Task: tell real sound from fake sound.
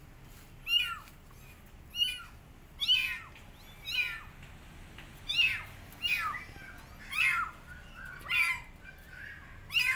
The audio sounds real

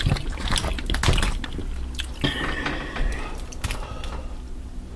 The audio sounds real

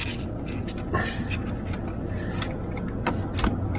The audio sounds real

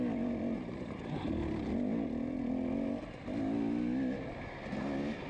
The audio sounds real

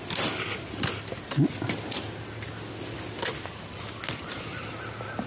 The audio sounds real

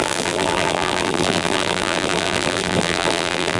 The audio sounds fake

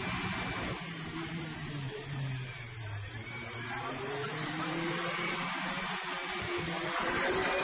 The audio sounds fake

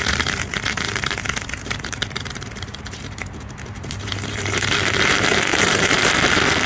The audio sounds fake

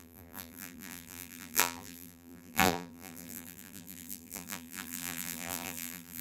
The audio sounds fake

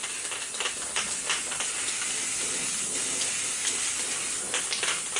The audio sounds real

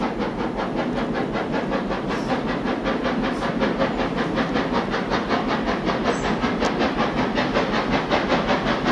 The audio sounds real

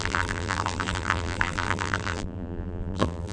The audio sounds fake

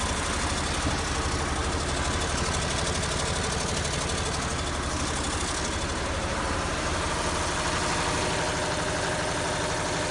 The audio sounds real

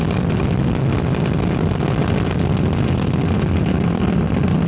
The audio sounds real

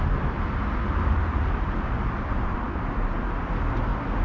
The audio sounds real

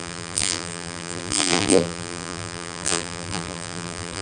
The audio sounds fake